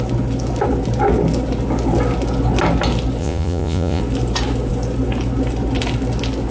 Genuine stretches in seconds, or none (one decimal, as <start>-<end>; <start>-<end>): 0.0-3.2; 4.0-6.5